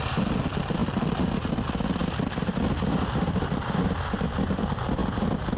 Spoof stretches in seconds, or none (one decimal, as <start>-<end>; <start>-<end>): none